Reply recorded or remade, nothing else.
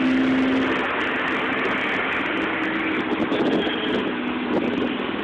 recorded